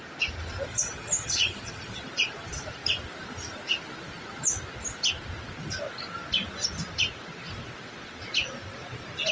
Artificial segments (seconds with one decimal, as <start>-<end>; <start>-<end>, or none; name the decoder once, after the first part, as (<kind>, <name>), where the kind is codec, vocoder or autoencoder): 0.7-2.0 (vocoder, HiFi-GAN)